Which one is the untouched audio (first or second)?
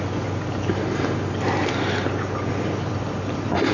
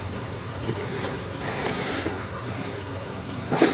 first